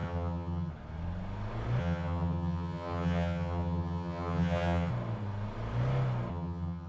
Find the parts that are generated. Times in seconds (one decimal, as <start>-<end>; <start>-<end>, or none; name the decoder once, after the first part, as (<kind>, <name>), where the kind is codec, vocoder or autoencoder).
0.0-0.7 (vocoder, HiFi-GAN); 1.8-4.9; 6.3-6.9